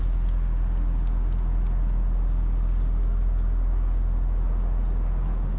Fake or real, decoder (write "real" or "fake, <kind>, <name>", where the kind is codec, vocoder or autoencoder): real